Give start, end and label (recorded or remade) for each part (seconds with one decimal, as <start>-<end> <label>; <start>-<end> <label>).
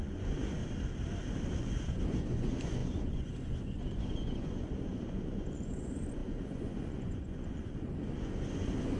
0.0-0.6 remade; 0.6-1.6 recorded; 1.6-9.0 remade